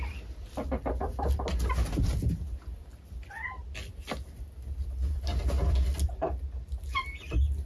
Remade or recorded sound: recorded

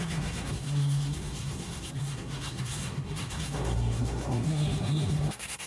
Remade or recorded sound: remade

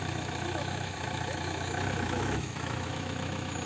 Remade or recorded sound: remade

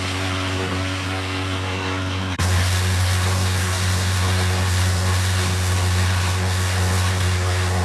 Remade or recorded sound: remade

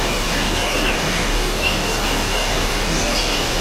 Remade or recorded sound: remade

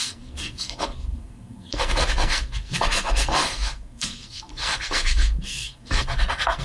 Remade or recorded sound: remade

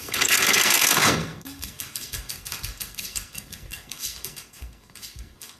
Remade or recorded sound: remade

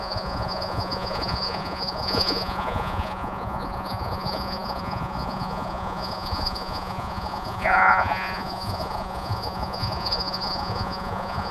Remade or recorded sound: remade